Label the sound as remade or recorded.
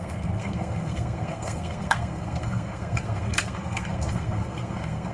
remade